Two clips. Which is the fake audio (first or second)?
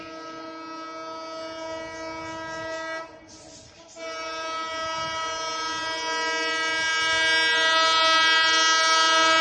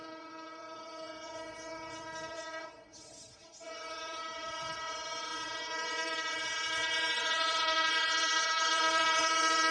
second